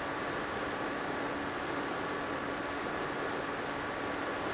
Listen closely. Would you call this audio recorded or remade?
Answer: recorded